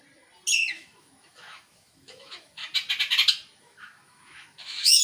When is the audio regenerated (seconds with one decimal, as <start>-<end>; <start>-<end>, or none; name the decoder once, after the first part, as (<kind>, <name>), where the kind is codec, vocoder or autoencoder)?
0.7-2.6 (autoencoder, DAC-VAE); 3.6-5.0